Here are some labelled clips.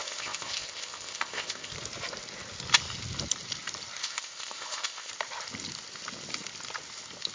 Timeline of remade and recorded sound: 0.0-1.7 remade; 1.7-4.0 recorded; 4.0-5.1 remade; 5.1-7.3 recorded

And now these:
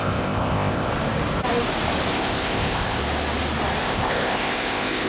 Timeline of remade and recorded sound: 0.0-0.9 remade; 0.9-2.1 recorded; 2.1-3.0 remade; 3.0-3.8 recorded; 3.8-5.1 remade